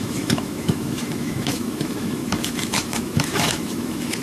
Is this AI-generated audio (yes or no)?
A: yes